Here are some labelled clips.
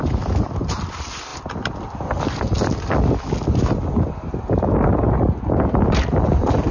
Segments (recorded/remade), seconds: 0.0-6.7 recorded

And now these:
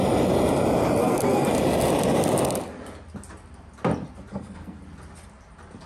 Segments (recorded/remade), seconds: 0.0-1.0 recorded; 1.0-1.5 remade; 1.5-4.3 recorded; 4.3-4.8 remade; 4.8-5.9 recorded

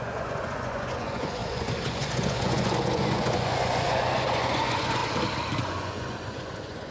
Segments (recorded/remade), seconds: 0.0-5.0 remade; 5.0-5.6 recorded; 5.6-6.9 remade

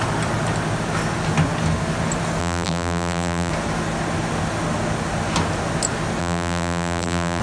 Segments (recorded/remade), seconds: 0.0-2.4 recorded; 2.4-3.5 remade; 3.5-6.2 recorded; 6.2-7.4 remade

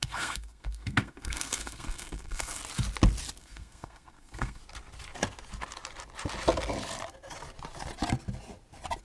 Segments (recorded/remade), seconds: 0.0-2.6 remade; 2.6-3.4 recorded; 3.4-4.6 remade; 4.6-9.0 recorded

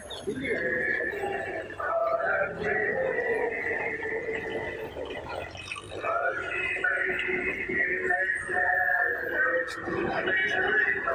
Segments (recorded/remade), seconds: 0.0-11.1 recorded

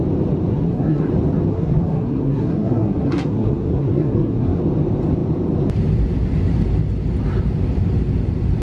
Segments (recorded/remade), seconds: 0.0-0.5 recorded; 0.5-1.1 remade; 1.1-1.5 recorded; 1.5-4.6 remade; 4.6-8.6 recorded